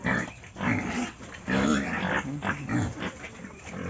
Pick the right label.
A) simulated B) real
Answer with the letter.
A